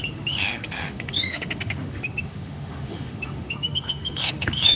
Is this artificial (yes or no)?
yes